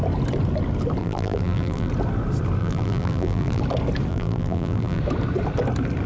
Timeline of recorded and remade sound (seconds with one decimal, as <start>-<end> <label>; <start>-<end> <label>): 0.0-1.0 recorded; 1.0-1.9 remade; 1.9-2.6 recorded; 2.6-3.6 remade; 3.6-4.1 recorded; 4.1-5.0 remade; 5.0-6.1 recorded